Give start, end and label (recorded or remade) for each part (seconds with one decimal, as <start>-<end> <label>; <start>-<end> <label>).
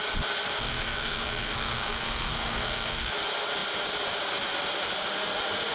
0.0-0.6 recorded; 0.6-3.1 remade; 3.1-5.7 recorded